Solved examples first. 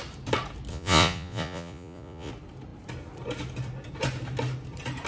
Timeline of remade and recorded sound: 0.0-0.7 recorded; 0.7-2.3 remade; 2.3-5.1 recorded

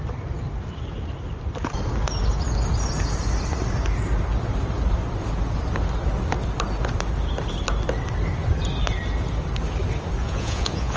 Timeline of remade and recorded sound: 0.0-10.2 recorded; 10.2-11.0 remade

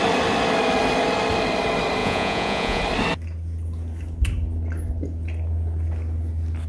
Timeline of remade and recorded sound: 0.0-2.0 recorded; 2.0-2.8 remade; 2.8-6.7 recorded

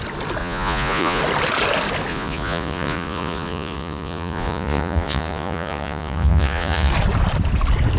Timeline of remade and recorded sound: 0.0-0.4 recorded; 0.4-1.2 remade; 1.2-2.1 recorded; 2.1-6.9 remade; 6.9-8.0 recorded

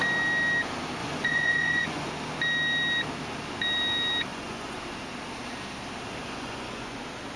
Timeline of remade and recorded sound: 0.0-1.0 recorded; 1.0-2.1 remade; 2.1-4.3 recorded; 4.3-4.8 remade; 4.8-6.2 recorded; 6.2-7.0 remade; 7.0-7.4 recorded